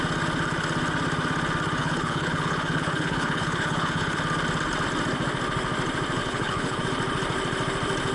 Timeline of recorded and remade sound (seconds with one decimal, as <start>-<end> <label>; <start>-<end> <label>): 0.0-1.8 recorded; 1.8-4.2 remade; 4.2-6.2 recorded; 6.2-6.8 remade; 6.8-8.1 recorded